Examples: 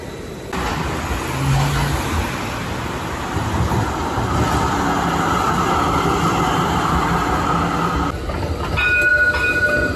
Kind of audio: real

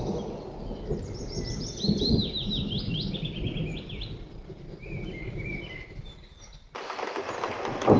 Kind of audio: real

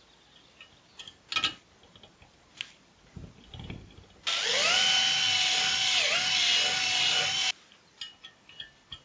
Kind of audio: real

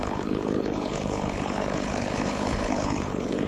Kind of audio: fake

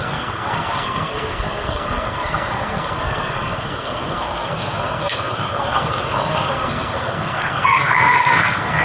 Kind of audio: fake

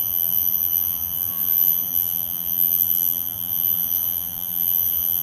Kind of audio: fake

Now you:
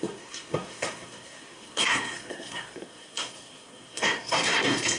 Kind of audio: fake